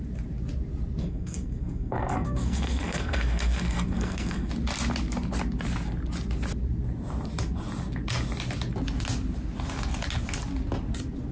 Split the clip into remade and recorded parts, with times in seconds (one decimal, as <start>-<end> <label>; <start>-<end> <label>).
0.0-1.0 recorded; 1.0-4.5 remade; 4.5-11.3 recorded